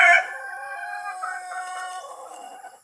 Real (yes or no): yes